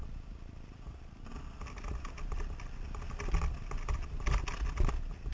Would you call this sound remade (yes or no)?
no